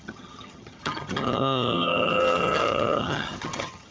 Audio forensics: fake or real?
fake